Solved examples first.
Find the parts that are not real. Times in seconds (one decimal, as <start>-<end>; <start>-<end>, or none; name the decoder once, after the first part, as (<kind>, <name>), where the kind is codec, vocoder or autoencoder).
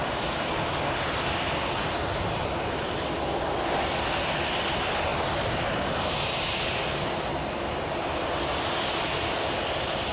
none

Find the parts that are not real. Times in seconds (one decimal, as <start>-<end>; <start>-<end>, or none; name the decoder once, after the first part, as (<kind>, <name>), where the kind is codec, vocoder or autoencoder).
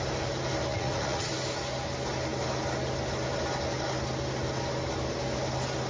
0.7-1.3 (vocoder, Vocos)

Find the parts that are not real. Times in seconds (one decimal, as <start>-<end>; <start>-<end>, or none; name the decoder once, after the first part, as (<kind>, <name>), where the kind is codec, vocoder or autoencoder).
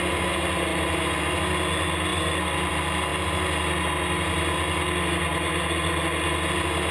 none